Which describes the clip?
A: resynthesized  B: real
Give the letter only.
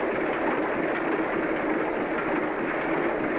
B